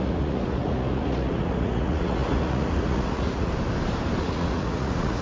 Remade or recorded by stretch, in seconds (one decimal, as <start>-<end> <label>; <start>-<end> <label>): 0.0-3.5 remade; 3.5-4.2 recorded; 4.2-5.2 remade